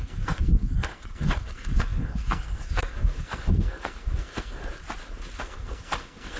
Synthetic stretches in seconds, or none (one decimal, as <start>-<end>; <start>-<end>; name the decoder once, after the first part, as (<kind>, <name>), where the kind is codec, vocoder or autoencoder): 0.0-4.6 (codec, SNAC); 5.4-6.4